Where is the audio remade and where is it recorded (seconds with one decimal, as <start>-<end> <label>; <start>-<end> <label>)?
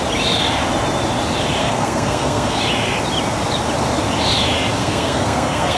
0.0-1.6 recorded; 1.6-2.6 remade; 2.6-4.8 recorded; 4.8-5.8 remade